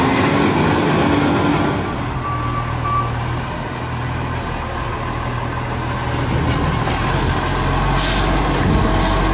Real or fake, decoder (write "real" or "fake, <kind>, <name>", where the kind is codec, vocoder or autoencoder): real